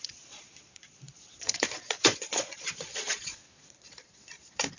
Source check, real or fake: fake